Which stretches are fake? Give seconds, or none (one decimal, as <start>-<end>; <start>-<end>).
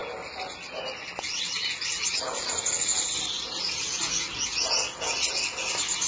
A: none